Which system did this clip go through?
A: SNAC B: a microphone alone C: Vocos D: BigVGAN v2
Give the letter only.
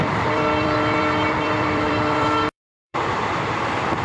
D